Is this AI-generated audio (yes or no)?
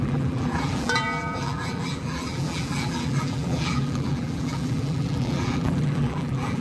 yes